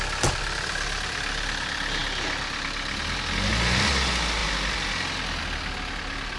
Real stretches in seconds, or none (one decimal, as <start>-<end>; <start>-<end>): 0.0-6.4